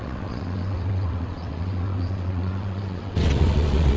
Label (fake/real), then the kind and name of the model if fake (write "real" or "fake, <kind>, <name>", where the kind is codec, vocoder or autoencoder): fake, vocoder, WaveNeXt